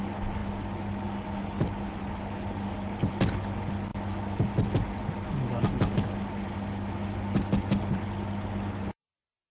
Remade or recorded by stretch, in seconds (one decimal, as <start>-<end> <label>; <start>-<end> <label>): 0.0-9.5 recorded

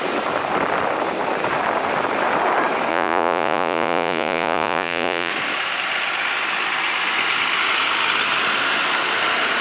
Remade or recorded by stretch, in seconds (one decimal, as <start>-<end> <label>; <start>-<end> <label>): 0.0-2.9 recorded; 2.9-5.3 remade; 5.3-9.6 recorded

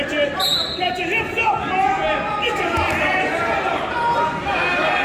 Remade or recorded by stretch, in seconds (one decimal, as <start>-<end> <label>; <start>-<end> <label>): 0.0-5.0 recorded

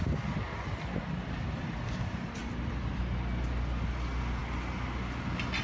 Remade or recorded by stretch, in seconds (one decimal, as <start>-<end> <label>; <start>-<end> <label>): 0.0-5.6 recorded

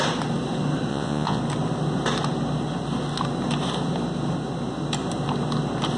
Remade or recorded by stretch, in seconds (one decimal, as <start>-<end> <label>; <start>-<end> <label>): 0.0-0.9 recorded; 0.9-1.4 remade; 1.4-6.0 recorded

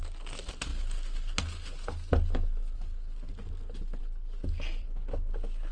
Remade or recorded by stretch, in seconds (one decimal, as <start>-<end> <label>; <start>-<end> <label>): 0.0-5.7 recorded

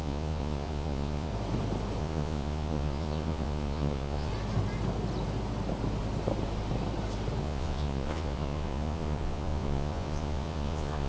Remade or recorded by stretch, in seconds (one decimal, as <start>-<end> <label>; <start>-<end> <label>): 0.0-1.3 remade; 1.3-2.0 recorded; 2.0-4.3 remade; 4.3-7.4 recorded; 7.4-11.1 remade